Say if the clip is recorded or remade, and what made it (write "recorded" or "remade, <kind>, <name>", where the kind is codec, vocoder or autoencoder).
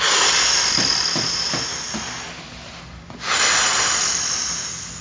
recorded